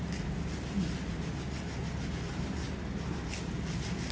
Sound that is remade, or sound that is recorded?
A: recorded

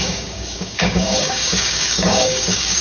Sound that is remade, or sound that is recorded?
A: remade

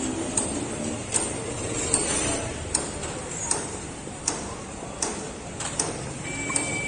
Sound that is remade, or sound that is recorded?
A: remade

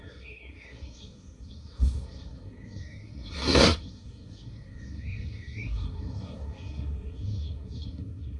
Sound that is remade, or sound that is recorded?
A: remade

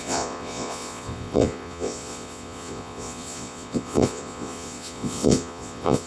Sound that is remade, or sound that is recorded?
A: remade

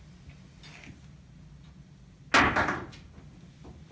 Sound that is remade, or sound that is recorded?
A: recorded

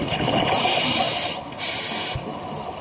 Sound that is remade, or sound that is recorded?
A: recorded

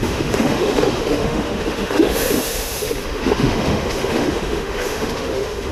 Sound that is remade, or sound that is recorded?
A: remade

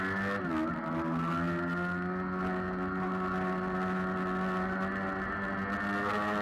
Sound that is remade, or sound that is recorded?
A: recorded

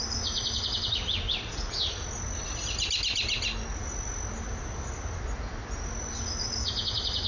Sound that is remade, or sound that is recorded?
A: recorded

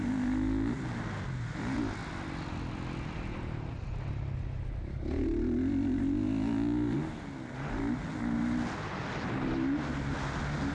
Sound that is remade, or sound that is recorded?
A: recorded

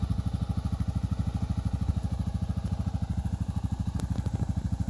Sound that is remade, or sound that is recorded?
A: recorded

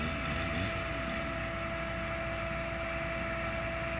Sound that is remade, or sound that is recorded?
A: recorded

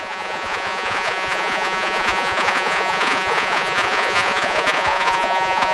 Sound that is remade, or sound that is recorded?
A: remade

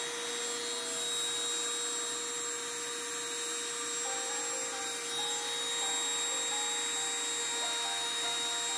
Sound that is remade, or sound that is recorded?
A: recorded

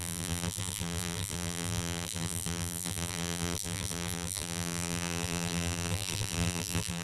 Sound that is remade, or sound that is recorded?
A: remade